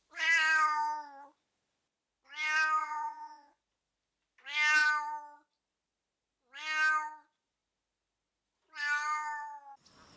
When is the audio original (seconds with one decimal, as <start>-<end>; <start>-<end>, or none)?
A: 0.0-2.8; 3.6-10.2

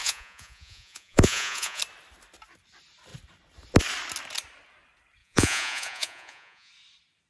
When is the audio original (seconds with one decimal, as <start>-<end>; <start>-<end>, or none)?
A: 1.8-5.2; 6.7-7.3

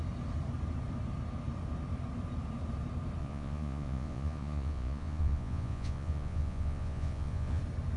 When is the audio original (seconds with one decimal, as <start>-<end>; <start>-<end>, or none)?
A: 0.0-3.2; 7.6-8.0